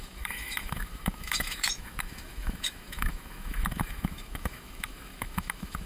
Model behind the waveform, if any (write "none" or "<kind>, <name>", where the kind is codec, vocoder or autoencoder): autoencoder, DAC-VAE